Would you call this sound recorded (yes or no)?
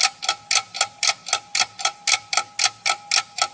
yes